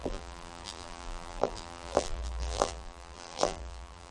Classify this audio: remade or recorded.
remade